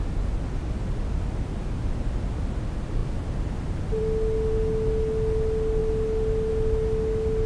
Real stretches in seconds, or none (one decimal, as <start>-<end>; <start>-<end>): 0.0-7.5